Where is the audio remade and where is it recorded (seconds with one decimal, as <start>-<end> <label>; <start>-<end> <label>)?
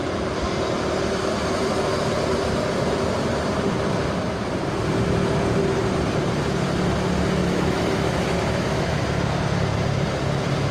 0.0-7.4 recorded; 7.4-8.9 remade; 8.9-10.7 recorded